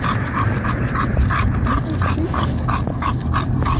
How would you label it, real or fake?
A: real